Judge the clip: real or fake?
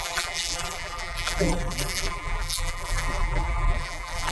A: fake